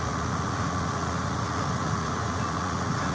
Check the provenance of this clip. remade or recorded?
remade